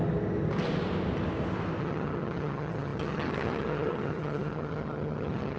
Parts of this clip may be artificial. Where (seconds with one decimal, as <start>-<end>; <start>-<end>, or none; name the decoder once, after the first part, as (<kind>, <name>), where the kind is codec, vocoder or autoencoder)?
1.8-5.6 (vocoder, HiFi-GAN)